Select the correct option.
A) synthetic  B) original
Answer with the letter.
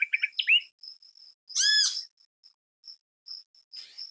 B